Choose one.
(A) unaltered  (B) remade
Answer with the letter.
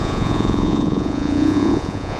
B